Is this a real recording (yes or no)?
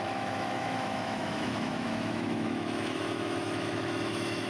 no